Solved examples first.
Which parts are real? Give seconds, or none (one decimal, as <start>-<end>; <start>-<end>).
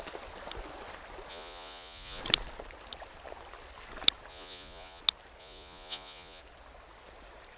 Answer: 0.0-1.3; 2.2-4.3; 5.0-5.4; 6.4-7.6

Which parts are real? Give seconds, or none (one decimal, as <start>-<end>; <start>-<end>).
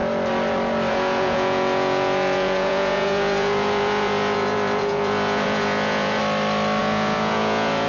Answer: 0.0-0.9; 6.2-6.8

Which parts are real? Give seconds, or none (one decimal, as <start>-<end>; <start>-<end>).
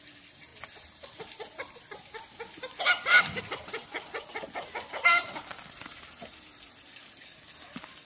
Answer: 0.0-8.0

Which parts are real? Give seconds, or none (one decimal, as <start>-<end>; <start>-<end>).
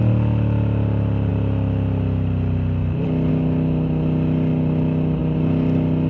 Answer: 0.0-6.1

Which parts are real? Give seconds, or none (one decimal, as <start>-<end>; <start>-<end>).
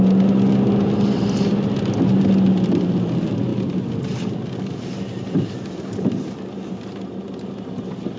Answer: 0.0-8.2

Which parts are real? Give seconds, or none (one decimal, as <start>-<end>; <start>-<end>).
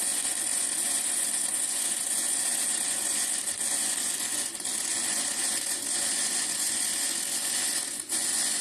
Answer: none